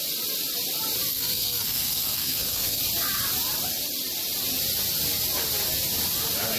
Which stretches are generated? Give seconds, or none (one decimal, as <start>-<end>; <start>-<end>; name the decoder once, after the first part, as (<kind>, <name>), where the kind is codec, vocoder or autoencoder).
1.1-2.8 (codec, SNAC)